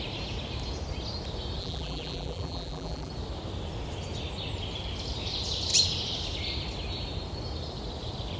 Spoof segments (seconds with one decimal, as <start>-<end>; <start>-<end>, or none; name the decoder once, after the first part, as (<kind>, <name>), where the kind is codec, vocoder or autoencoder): 1.6-3.1 (vocoder, BigVGAN v2)